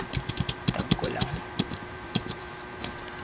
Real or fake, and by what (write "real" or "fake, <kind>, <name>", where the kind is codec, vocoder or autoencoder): fake, vocoder, BigVGAN v2